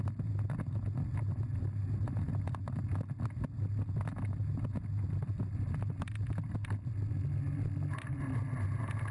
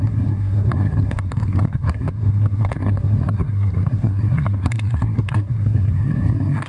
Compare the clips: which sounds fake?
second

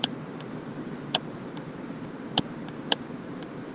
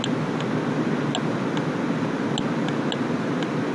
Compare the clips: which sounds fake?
first